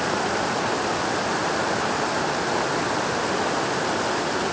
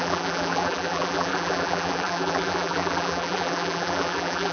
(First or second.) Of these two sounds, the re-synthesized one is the second